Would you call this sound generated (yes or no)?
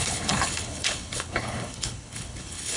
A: yes